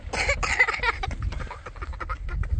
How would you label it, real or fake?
real